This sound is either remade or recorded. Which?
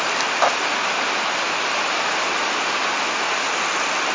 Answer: recorded